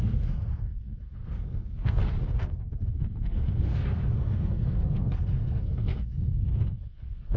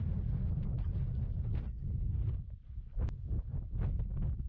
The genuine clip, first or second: second